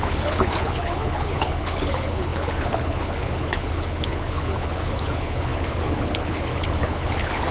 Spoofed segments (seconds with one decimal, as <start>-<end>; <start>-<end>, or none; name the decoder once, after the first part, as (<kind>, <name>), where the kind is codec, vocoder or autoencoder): 0.0-7.5 (codec, HILCodec)